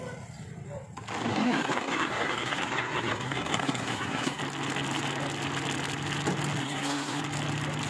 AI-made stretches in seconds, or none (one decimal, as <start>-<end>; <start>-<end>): 1.3-4.4; 6.6-7.2